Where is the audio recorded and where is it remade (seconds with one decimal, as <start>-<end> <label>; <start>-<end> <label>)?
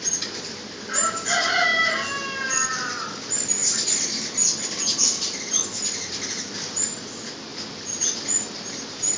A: 0.0-9.2 recorded